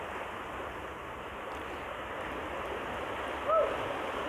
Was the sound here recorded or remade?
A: recorded